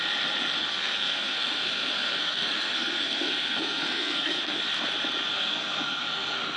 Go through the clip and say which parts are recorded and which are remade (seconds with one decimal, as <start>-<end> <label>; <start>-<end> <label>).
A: 0.0-0.6 recorded; 0.6-4.6 remade; 4.6-5.3 recorded; 5.3-6.6 remade